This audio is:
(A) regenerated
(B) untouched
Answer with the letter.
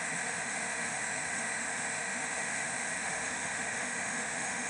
A